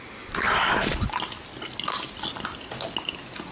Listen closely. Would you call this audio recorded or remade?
recorded